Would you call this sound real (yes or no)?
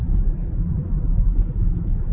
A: yes